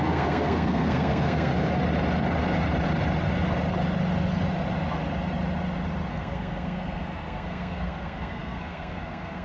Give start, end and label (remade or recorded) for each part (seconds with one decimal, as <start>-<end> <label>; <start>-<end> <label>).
0.0-1.5 remade; 1.5-6.1 recorded; 6.1-9.4 remade